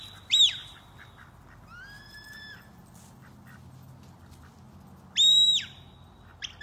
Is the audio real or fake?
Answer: real